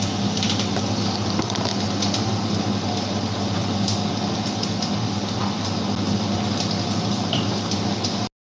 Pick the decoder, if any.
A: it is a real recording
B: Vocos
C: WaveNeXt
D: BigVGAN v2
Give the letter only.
A